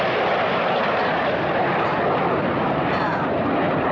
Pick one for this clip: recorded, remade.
recorded